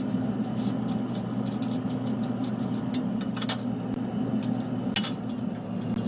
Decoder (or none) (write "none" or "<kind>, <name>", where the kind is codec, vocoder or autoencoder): none